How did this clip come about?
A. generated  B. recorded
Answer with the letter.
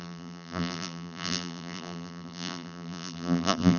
A